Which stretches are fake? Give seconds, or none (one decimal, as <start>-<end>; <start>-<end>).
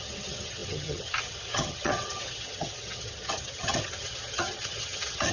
0.0-5.3